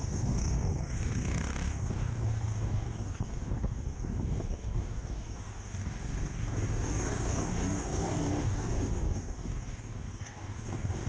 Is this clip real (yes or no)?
no